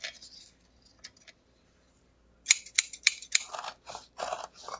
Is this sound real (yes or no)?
yes